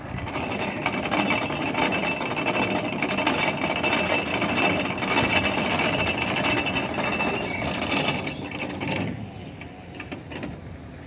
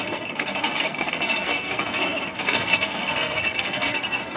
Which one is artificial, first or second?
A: second